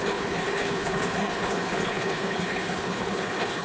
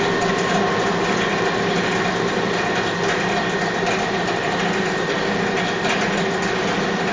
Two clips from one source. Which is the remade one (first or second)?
first